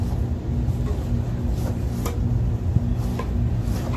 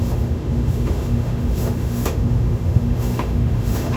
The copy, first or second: second